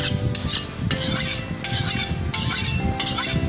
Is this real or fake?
real